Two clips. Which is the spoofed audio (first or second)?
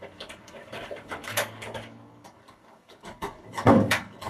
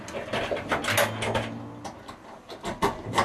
first